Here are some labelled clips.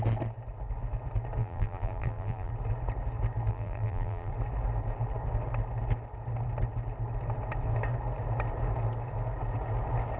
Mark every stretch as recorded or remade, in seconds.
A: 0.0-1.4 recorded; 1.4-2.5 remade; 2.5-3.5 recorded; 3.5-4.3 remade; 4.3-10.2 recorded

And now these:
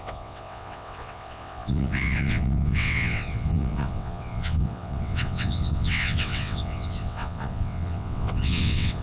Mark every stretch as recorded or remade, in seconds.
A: 0.0-9.0 remade

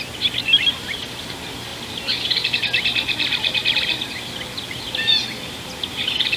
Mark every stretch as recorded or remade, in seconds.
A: 0.0-6.4 recorded

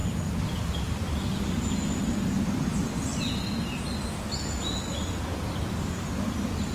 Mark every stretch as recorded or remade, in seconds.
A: 0.0-1.4 remade; 1.4-6.7 recorded